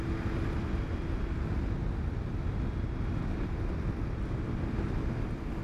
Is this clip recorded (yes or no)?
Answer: yes